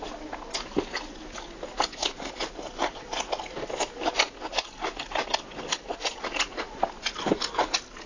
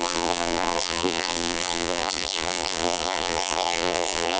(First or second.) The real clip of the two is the first